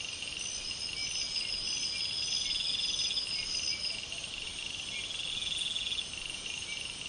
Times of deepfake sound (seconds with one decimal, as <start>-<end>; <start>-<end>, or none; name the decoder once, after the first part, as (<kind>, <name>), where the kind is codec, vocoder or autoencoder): none